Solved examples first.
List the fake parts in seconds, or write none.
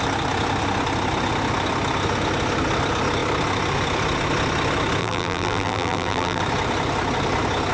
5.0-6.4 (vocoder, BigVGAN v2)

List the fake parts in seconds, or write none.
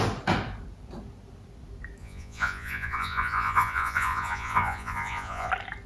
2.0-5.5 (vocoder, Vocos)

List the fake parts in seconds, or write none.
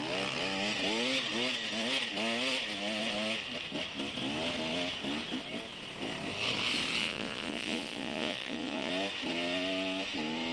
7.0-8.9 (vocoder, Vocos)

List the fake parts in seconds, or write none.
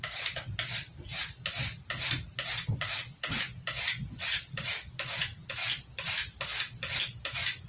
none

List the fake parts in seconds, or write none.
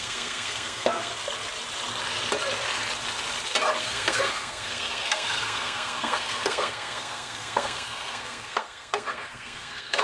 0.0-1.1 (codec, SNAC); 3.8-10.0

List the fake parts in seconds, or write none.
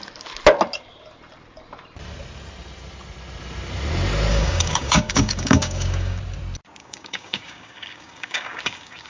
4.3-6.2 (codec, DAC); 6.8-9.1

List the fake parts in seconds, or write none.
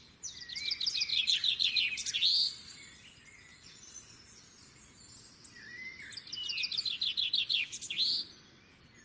1.1-1.8 (vocoder, Vocos); 3.5-4.4